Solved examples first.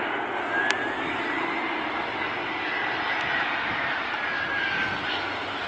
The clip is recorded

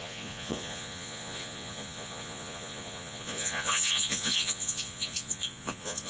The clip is remade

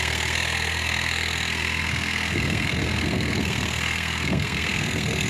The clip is remade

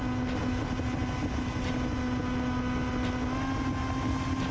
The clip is recorded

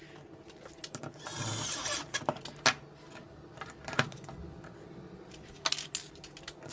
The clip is recorded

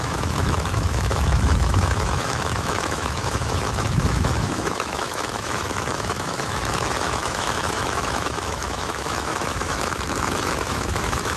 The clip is remade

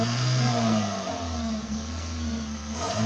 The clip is remade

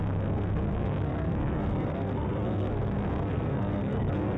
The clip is remade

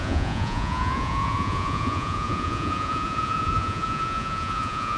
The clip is remade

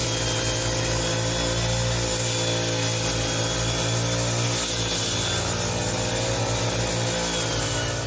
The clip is recorded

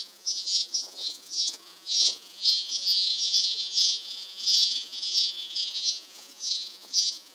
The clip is remade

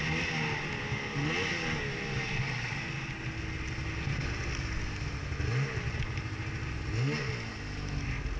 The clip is recorded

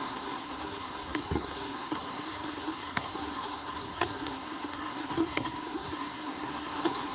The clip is remade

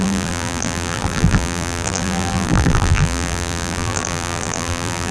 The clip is remade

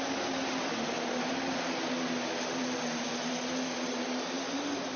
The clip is recorded